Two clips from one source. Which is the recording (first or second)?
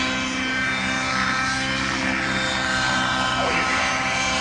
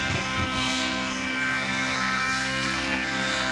first